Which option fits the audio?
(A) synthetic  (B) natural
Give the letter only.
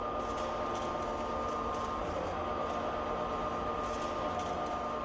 B